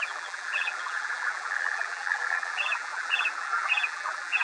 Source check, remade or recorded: remade